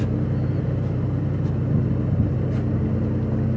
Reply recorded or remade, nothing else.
recorded